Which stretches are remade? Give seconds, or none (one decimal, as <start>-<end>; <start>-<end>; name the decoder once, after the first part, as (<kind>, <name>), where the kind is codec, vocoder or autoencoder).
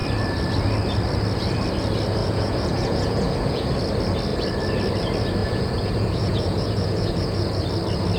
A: 2.2-3.7 (vocoder, Vocos); 5.4-7.6